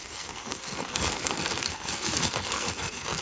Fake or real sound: fake